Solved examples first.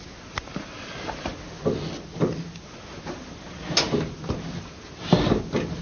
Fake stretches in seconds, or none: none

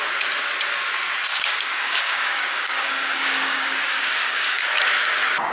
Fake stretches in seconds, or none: 1.3-4.6 (codec, DAC)

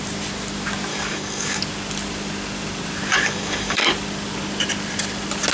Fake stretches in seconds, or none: 0.9-1.6 (codec, DAC); 3.1-3.9

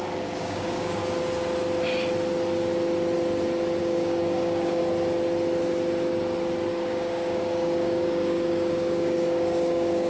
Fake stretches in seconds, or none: 0.0-1.0 (codec, DAC); 3.8-4.8; 6.7-10.1

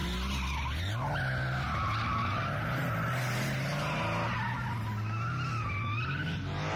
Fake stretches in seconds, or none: none

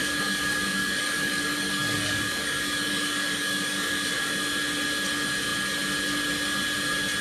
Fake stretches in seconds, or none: 0.0-4.3 (codec, DAC)

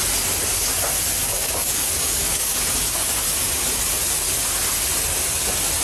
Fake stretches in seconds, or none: 1.2-2.6 (codec, DAC)